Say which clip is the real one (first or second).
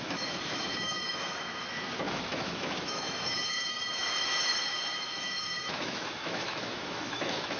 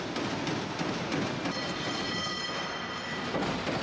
second